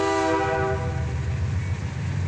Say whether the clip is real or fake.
real